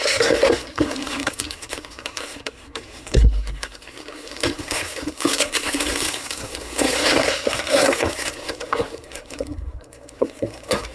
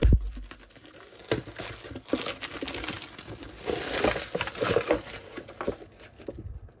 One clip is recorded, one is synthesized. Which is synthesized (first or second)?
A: first